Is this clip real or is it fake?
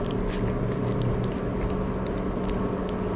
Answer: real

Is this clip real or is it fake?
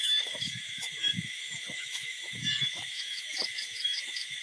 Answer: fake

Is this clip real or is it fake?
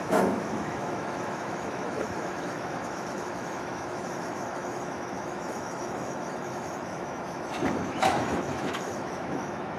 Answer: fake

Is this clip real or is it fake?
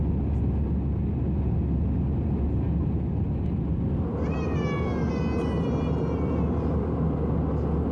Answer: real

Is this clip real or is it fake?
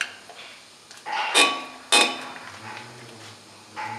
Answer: real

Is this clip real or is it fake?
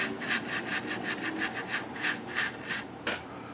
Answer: real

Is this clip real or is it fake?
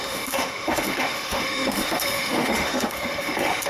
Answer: fake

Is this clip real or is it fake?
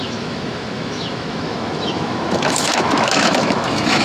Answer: fake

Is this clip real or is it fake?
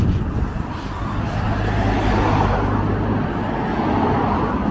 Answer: real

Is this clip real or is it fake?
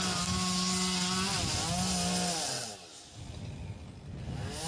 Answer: real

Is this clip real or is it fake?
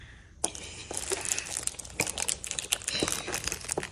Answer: real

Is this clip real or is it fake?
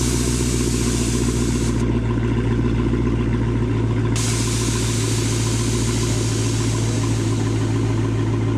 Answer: real